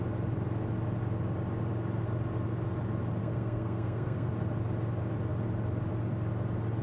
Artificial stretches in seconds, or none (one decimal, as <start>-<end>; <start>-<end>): 3.2-4.3